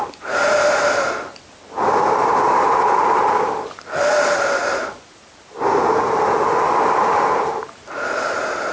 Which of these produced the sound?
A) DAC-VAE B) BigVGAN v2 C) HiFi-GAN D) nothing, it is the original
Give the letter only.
D